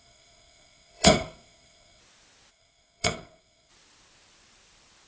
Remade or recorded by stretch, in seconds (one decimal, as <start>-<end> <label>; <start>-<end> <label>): 0.0-2.0 remade; 2.0-2.5 recorded; 2.5-3.7 remade; 3.7-5.1 recorded